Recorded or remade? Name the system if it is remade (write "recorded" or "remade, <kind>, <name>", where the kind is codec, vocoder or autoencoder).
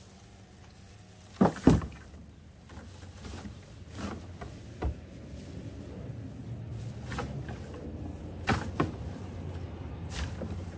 recorded